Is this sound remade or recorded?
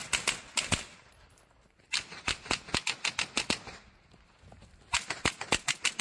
recorded